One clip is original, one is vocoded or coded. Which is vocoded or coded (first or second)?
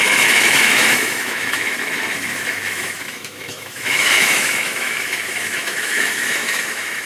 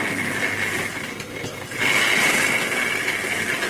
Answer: first